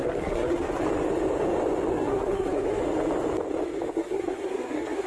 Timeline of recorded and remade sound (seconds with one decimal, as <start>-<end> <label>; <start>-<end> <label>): 0.0-0.8 remade; 0.8-1.9 recorded; 1.9-2.8 remade; 2.8-3.9 recorded; 3.9-5.1 remade